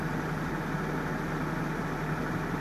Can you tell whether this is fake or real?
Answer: real